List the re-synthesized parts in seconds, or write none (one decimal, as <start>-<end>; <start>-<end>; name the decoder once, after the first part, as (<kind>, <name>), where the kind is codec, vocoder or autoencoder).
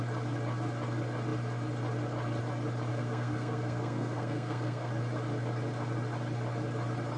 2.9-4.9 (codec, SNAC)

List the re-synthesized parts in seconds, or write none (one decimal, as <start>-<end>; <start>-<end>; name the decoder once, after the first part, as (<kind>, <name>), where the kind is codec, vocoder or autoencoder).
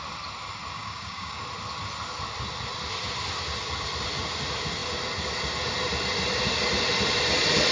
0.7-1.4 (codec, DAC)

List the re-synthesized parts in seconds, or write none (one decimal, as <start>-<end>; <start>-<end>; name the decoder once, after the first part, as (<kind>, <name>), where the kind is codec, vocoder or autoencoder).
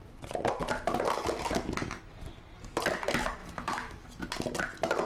3.4-4.1 (autoencoder, DAC-VAE)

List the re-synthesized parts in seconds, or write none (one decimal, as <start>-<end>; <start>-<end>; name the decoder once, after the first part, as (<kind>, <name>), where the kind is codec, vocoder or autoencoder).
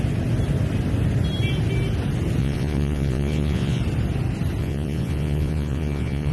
2.4-3.8 (vocoder, Vocos); 4.6-6.3